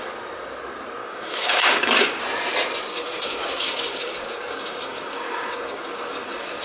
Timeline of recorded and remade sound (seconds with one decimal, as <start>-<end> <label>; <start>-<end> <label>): 0.0-1.0 recorded; 1.0-2.2 remade; 2.2-2.9 recorded; 2.9-6.6 remade